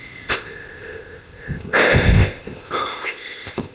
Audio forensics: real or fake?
fake